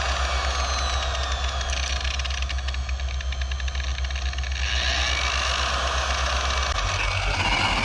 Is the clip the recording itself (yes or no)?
yes